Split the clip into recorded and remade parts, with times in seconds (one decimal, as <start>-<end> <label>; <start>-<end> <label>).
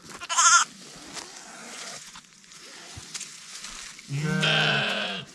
0.0-1.6 recorded; 1.6-3.6 remade; 3.6-4.7 recorded; 4.7-5.3 remade